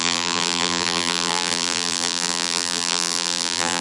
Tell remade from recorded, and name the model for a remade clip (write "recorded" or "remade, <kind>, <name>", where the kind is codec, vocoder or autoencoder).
remade, vocoder, BigVGAN v2